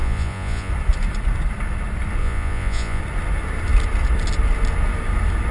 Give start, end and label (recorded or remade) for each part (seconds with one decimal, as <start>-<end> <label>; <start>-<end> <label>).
0.0-0.7 remade; 0.7-2.2 recorded; 2.2-3.0 remade; 3.0-5.5 recorded